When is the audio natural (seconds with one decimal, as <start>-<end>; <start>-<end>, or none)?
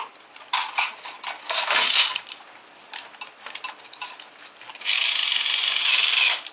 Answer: 0.0-6.5